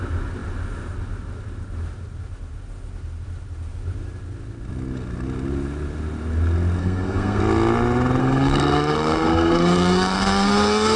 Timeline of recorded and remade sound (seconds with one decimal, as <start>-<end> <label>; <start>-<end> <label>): 0.0-6.8 recorded; 6.8-7.4 remade; 7.4-8.2 recorded; 8.2-11.0 remade